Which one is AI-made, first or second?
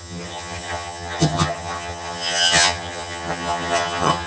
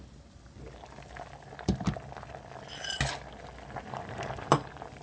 first